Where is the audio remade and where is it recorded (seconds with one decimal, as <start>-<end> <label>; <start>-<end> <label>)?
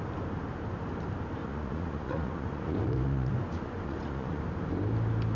0.0-1.4 recorded; 1.4-4.4 remade; 4.4-5.3 recorded